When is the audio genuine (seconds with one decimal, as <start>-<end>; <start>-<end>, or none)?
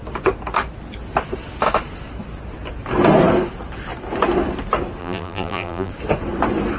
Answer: 0.0-5.0; 5.9-6.8